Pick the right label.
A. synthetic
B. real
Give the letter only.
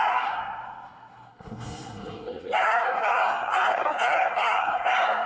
A